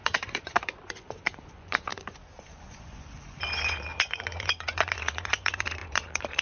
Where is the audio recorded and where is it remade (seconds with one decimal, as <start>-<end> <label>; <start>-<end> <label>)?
0.0-6.4 remade